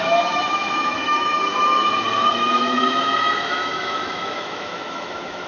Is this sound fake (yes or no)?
yes